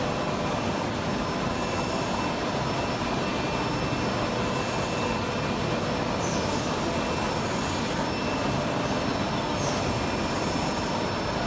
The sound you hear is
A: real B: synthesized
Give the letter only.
A